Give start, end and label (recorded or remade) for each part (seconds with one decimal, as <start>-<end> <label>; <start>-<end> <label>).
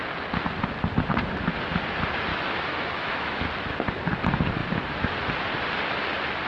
0.0-2.3 recorded; 2.3-3.4 remade; 3.4-6.5 recorded